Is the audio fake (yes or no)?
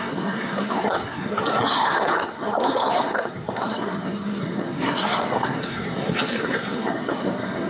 yes